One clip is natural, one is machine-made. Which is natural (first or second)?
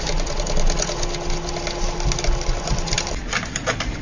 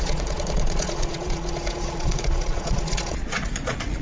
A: first